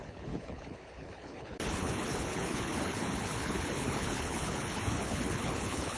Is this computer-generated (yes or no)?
yes